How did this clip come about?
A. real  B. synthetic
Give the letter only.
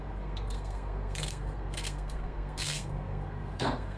B